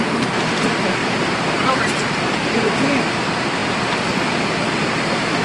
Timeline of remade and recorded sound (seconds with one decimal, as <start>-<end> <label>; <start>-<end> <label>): 0.0-1.0 recorded; 1.0-3.0 remade; 3.0-5.4 recorded